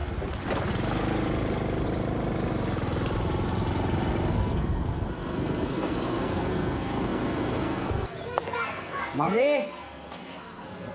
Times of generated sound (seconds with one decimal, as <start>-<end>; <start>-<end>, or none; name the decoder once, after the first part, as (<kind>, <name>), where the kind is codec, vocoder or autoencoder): 4.3-10.9 (codec, SNAC)